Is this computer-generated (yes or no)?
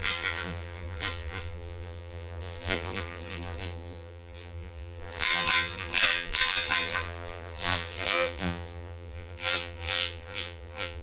yes